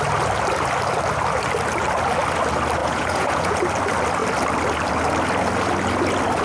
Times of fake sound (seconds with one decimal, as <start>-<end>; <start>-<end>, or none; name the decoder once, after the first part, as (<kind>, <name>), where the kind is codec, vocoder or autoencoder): 2.8-3.6 (vocoder, Vocos)